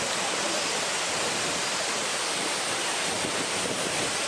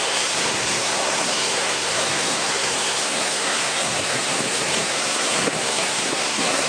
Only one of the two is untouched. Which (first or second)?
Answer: first